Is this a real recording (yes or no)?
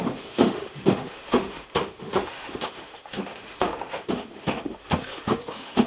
no